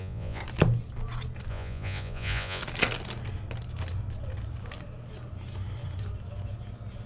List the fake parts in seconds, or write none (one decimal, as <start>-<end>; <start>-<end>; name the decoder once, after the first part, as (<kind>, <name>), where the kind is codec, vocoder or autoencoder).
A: 0.0-0.4 (vocoder, Vocos); 1.5-2.6